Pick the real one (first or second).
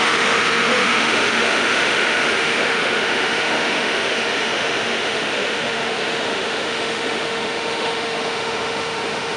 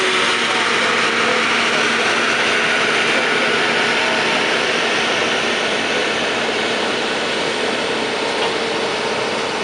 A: second